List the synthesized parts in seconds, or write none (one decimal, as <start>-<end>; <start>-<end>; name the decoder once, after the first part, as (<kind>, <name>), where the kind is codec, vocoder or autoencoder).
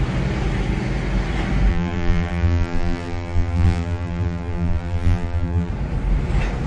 1.7-5.7 (vocoder, BigVGAN v2)